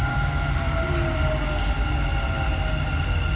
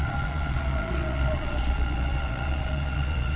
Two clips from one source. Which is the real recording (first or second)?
first